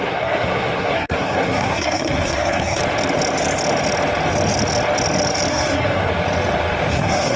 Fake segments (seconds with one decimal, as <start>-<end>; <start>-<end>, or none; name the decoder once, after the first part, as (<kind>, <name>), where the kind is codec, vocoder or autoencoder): 0.0-2.8 (codec, SNAC); 5.5-6.1; 6.9-7.4